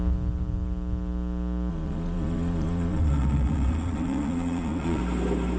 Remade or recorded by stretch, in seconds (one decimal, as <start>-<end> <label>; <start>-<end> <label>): 0.0-1.7 recorded; 1.7-5.0 remade; 5.0-5.6 recorded